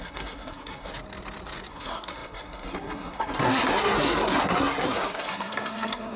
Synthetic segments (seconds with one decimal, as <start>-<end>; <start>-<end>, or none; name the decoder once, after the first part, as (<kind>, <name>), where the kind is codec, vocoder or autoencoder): 0.0-0.9 (codec, SNAC); 1.7-6.2